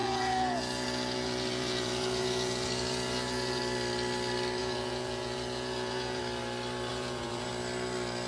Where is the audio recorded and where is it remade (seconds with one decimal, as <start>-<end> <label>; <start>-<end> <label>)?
0.0-3.6 remade; 3.6-4.6 recorded; 4.6-6.2 remade; 6.2-6.9 recorded; 6.9-7.5 remade; 7.5-8.3 recorded